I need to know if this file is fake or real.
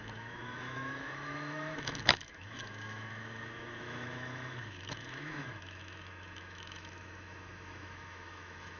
fake